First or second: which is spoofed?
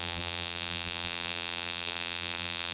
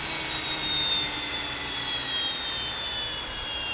first